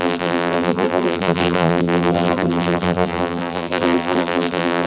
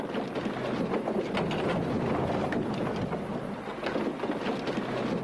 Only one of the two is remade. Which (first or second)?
first